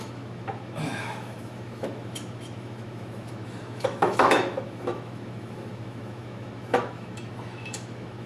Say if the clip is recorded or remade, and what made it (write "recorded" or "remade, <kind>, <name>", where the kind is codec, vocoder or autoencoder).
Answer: remade, autoencoder, DAC-VAE